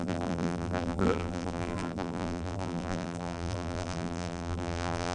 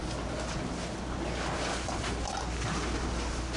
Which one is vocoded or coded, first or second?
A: first